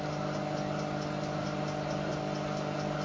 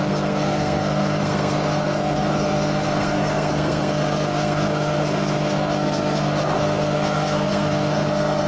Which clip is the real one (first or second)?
first